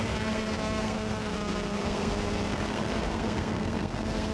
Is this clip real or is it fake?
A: fake